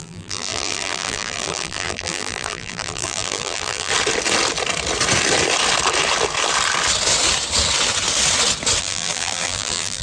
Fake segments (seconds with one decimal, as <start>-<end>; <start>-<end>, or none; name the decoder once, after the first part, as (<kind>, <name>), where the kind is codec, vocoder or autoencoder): 0.0-3.9 (vocoder, BigVGAN v2); 8.8-10.0